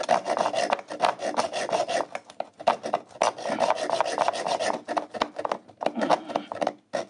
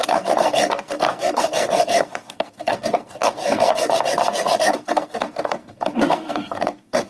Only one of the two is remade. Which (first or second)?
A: second